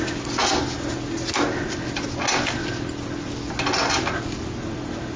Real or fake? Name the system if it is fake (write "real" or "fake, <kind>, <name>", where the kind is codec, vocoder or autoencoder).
real